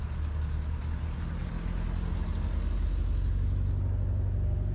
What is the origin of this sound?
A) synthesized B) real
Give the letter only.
B